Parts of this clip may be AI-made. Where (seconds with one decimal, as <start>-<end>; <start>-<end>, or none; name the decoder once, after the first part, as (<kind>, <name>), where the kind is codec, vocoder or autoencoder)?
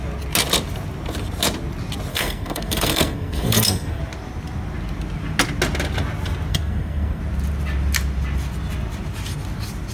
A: 2.1-4.0 (codec, SNAC); 6.5-7.2